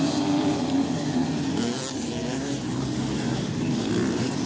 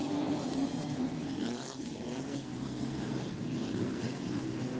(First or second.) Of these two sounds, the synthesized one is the second